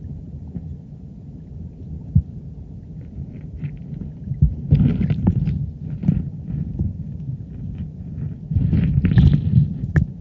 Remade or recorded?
recorded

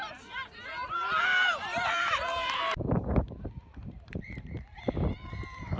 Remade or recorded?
remade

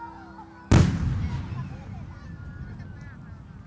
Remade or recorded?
recorded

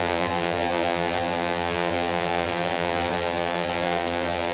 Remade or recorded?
remade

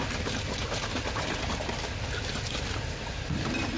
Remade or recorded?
recorded